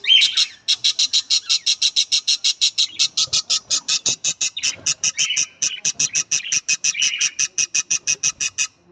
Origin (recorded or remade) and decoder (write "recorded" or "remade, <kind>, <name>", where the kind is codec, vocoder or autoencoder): recorded